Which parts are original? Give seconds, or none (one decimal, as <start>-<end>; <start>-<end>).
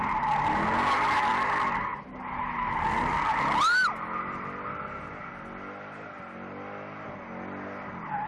0.0-8.3